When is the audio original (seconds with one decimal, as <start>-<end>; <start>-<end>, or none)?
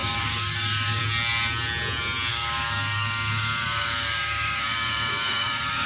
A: 1.0-2.3